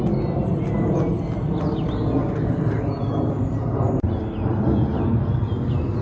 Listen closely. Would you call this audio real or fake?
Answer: real